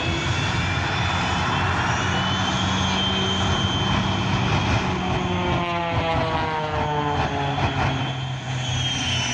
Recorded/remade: recorded